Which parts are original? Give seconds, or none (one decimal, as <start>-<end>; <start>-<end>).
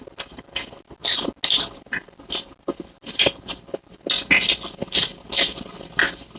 0.0-6.4